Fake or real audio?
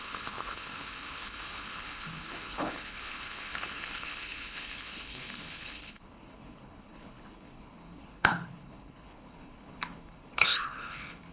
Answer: fake